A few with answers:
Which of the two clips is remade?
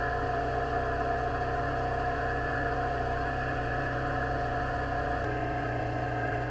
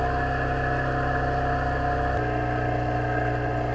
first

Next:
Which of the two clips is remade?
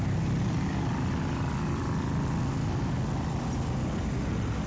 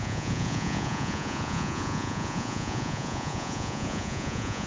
second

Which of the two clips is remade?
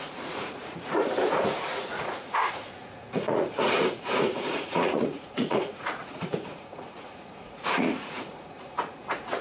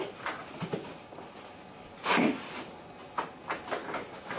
first